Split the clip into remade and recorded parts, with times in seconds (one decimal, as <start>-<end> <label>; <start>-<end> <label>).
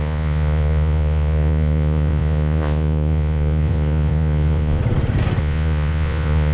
0.0-4.8 remade; 4.8-5.4 recorded; 5.4-6.5 remade